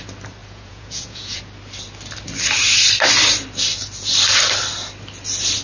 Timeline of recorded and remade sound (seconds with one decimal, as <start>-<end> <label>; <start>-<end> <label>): 0.0-0.4 recorded; 0.4-1.4 remade; 1.4-5.6 recorded